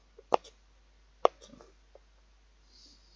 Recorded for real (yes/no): yes